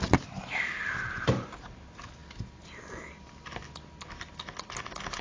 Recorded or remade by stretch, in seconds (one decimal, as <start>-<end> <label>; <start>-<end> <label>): 0.0-5.2 recorded